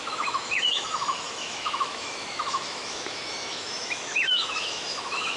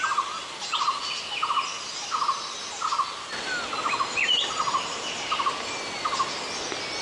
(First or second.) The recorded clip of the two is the second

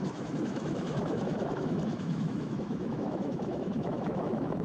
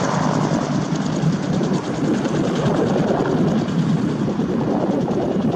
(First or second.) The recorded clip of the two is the second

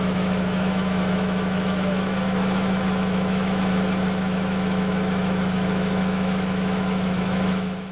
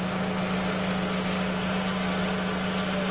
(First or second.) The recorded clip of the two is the second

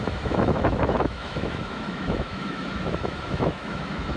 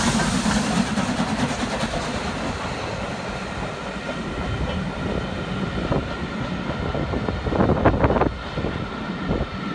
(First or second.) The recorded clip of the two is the second